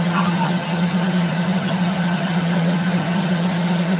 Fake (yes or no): yes